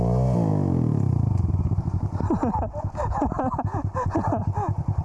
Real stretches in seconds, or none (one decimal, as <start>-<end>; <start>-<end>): 0.0-5.0